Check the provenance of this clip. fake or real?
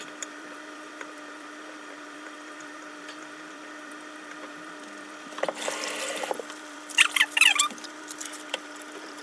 fake